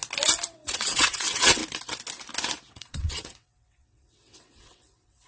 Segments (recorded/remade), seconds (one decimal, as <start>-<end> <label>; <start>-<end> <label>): 0.0-0.5 recorded; 0.5-1.6 remade; 1.6-2.7 recorded; 2.7-5.3 remade